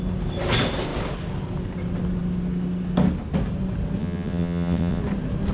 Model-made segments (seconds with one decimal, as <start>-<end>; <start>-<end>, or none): 4.0-5.0